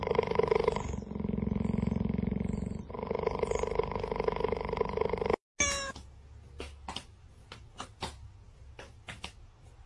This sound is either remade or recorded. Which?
recorded